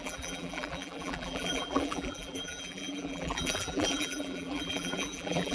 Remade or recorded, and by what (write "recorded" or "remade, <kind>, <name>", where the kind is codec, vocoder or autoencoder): remade, vocoder, BigVGAN v2